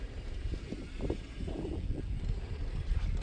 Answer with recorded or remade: recorded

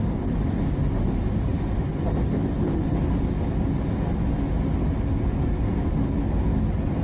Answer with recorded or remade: recorded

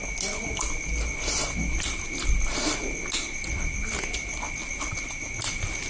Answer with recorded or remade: recorded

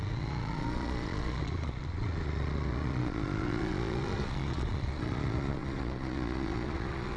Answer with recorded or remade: remade